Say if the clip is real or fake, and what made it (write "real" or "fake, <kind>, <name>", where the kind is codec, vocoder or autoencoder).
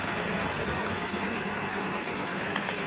fake, codec, SNAC